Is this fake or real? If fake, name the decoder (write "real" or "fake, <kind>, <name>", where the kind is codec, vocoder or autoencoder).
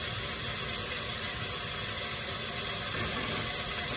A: real